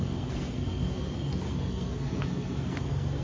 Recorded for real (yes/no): no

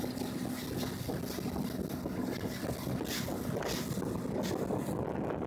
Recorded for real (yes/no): yes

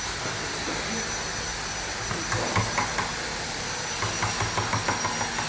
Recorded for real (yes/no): yes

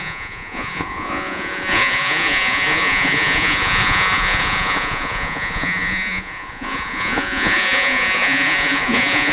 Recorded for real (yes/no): no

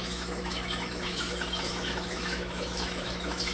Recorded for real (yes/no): no